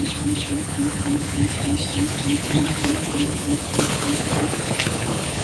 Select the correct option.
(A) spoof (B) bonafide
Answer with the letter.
A